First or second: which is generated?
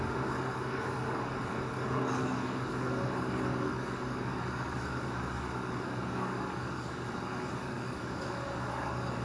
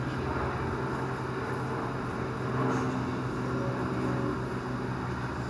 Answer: first